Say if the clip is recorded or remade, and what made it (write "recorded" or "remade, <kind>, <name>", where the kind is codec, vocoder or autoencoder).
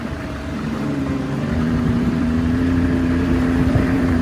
remade, vocoder, BigVGAN v2